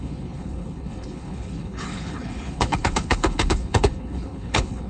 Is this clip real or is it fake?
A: fake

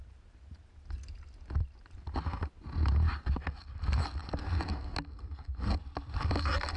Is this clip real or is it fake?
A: real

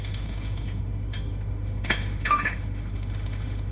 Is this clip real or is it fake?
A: fake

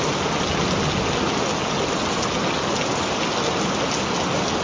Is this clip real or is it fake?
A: real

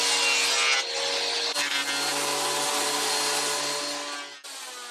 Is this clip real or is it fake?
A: real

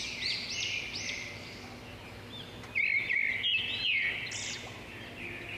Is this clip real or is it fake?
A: real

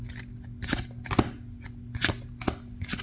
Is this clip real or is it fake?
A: real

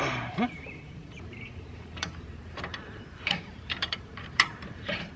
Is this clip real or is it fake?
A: fake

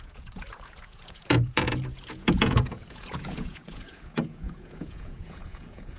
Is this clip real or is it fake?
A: fake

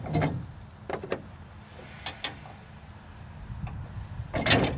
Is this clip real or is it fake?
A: real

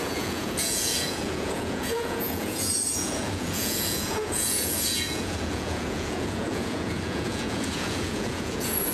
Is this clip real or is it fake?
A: fake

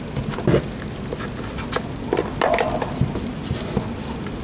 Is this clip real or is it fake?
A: real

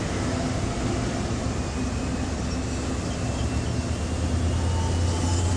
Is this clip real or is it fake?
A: real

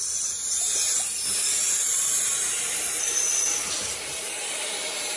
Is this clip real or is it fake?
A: fake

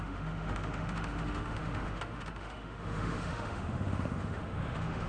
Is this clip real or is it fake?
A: fake